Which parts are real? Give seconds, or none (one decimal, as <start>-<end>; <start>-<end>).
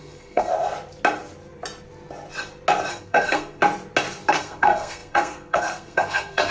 0.5-2.9; 3.6-4.3